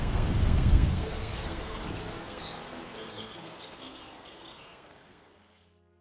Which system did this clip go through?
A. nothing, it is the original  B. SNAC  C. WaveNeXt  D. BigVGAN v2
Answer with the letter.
B